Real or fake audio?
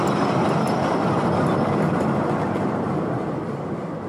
fake